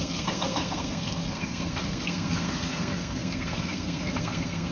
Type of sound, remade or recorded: remade